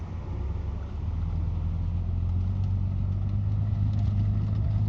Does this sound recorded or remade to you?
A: recorded